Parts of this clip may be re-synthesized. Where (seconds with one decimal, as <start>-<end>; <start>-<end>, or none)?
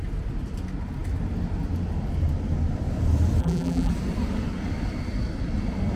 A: 3.4-3.9